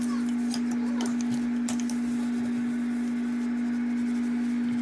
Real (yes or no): yes